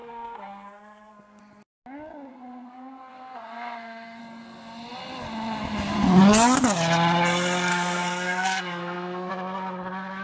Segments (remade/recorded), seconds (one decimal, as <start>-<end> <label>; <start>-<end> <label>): 0.0-1.4 remade; 1.4-2.3 recorded; 2.3-4.2 remade; 4.2-7.7 recorded; 7.7-9.3 remade; 9.3-10.2 recorded